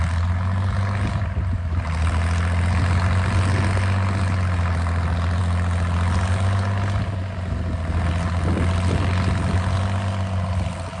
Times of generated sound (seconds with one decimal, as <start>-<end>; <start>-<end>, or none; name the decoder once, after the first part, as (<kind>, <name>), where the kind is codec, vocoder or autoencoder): none